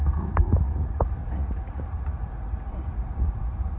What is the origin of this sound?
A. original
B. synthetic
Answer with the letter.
B